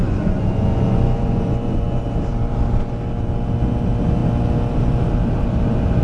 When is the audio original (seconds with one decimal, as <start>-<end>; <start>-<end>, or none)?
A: 2.0-6.0